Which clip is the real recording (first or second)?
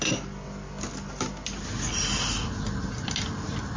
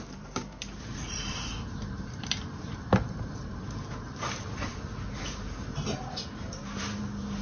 first